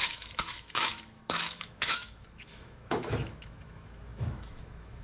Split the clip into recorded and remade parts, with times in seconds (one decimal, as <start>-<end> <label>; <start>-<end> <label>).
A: 0.0-5.0 remade